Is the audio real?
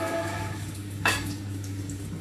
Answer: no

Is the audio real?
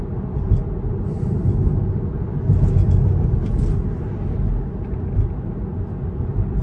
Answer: yes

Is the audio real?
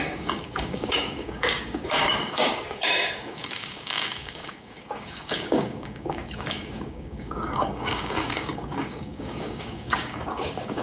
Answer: no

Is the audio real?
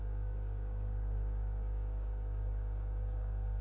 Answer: no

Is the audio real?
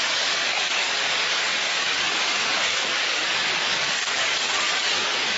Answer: no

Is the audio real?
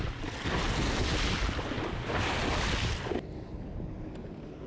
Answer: yes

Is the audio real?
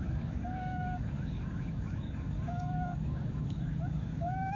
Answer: no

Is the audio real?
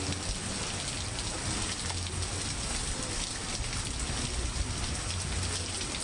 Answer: yes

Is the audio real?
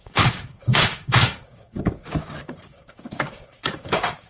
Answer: no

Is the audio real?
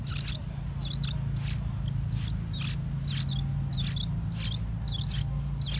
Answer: yes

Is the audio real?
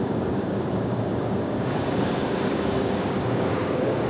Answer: no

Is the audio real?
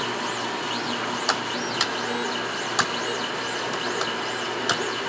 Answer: yes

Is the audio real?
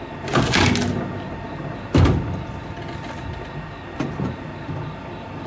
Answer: yes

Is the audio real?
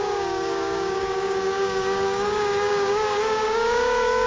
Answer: no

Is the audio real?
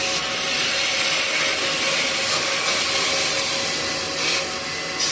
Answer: yes